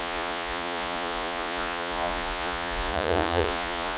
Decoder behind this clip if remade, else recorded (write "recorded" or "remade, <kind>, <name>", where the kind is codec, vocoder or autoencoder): remade, vocoder, Vocos